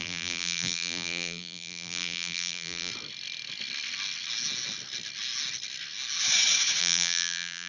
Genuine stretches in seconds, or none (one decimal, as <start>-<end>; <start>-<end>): 2.9-6.8